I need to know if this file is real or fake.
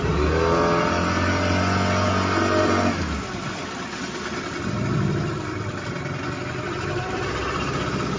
real